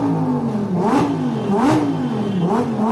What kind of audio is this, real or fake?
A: real